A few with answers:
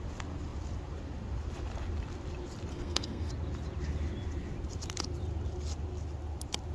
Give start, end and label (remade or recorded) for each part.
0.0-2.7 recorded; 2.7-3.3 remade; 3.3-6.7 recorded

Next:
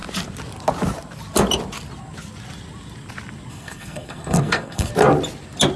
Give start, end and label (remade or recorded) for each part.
0.0-3.5 recorded; 3.5-4.9 remade; 4.9-5.8 recorded